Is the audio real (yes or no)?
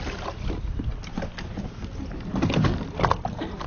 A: yes